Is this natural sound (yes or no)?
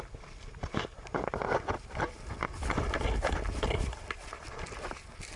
no